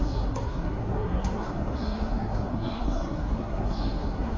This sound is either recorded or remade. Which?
remade